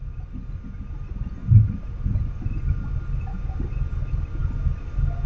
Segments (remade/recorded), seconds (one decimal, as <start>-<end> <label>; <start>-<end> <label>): 0.0-1.4 recorded; 1.4-2.7 remade; 2.7-5.3 recorded

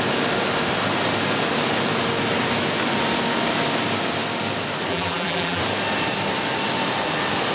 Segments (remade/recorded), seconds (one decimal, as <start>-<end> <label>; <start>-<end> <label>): 0.0-4.9 recorded; 4.9-5.6 remade; 5.6-7.5 recorded

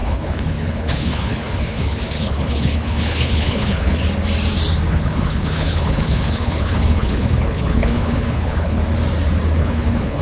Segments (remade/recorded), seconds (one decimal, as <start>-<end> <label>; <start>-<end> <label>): 0.0-4.0 remade; 4.0-4.9 recorded; 4.9-8.8 remade; 8.8-9.6 recorded; 9.6-10.2 remade

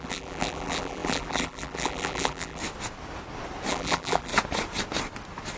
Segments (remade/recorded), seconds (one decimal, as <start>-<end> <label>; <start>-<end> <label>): 0.0-2.6 remade; 2.6-3.7 recorded; 3.7-4.3 remade; 4.3-5.6 recorded

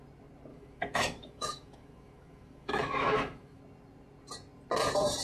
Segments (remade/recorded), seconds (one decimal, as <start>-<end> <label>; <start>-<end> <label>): 0.0-0.5 recorded; 0.5-3.6 remade; 3.6-5.2 recorded

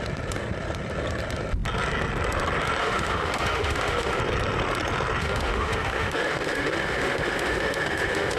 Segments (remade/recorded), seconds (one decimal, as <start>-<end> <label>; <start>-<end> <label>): 0.0-2.8 recorded; 2.8-4.2 remade; 4.2-5.2 recorded; 5.2-8.4 remade

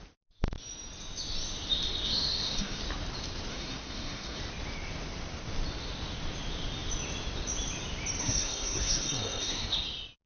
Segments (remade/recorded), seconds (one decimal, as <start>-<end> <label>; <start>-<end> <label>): 0.0-2.0 recorded; 2.0-2.8 remade; 2.8-3.5 recorded; 3.5-4.4 remade; 4.4-8.2 recorded; 8.2-9.8 remade; 9.8-10.3 recorded